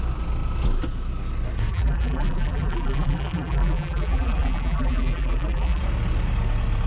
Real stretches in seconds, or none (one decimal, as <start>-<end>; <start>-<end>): 0.0-1.7; 5.8-6.9